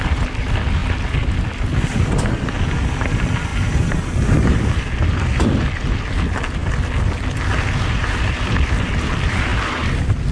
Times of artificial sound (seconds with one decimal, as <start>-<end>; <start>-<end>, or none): none